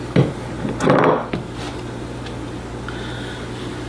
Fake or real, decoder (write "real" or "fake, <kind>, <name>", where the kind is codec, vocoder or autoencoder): real